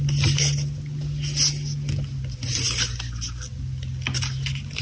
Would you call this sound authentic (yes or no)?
yes